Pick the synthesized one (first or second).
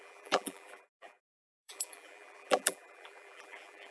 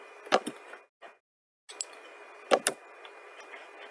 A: first